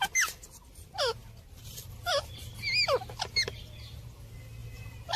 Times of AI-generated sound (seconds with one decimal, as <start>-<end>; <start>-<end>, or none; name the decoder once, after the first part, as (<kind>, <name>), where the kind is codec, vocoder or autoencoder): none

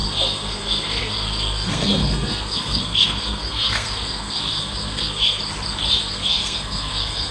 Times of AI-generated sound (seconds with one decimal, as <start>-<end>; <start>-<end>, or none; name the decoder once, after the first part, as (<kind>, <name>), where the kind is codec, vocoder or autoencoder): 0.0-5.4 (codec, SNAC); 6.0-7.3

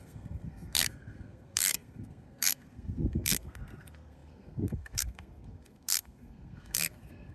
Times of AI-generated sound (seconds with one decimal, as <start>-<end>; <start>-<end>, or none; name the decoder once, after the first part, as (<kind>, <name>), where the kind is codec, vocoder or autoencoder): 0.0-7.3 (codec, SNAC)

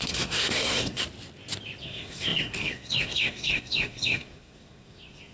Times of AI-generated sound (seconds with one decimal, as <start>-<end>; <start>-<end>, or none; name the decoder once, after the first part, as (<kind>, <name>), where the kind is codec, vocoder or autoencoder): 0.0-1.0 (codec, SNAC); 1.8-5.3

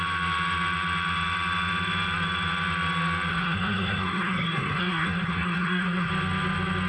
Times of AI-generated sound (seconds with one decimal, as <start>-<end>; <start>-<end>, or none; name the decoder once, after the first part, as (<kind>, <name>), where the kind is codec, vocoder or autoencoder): 3.3-6.1 (codec, SNAC)